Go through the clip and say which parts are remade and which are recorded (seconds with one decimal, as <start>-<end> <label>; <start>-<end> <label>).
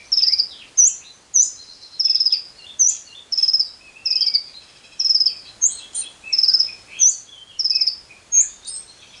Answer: 0.0-1.2 recorded; 1.2-9.2 remade